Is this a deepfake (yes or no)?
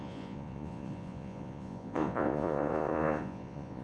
yes